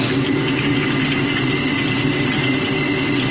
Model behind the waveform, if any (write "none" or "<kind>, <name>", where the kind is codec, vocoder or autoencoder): none